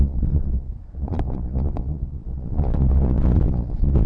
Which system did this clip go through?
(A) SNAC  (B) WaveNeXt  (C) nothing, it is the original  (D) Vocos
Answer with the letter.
D